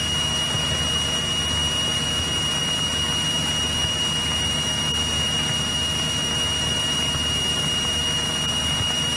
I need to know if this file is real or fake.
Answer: real